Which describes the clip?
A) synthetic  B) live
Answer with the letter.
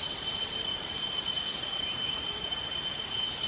A